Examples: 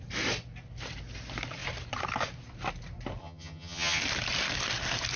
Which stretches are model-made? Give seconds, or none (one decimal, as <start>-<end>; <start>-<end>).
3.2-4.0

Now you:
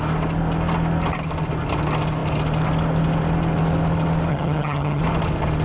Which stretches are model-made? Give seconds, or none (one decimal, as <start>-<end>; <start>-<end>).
4.3-5.0

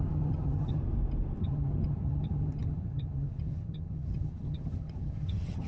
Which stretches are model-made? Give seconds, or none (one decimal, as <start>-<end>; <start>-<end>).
0.0-0.8; 1.4-5.7

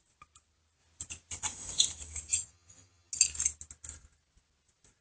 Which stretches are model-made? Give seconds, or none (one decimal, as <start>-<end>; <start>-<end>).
2.3-3.1

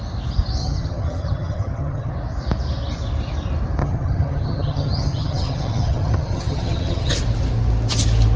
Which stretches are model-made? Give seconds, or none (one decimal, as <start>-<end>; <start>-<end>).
0.6-2.1; 3.8-7.2

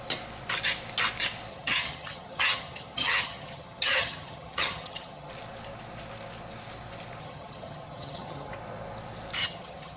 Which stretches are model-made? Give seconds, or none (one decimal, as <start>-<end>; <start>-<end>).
1.5-5.3; 7.2-8.5; 9.4-10.0

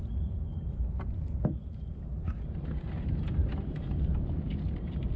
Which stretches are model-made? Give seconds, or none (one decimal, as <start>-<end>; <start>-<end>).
none

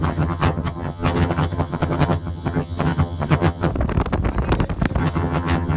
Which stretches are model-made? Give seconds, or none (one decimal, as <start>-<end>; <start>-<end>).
0.0-3.7; 5.0-5.8